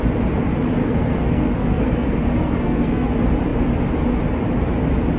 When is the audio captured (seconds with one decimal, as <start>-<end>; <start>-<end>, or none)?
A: 0.0-0.8; 3.1-5.2

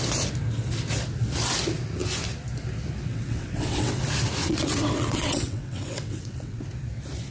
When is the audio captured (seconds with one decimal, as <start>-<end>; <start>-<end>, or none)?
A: 0.0-3.1; 4.0-4.4; 6.6-7.3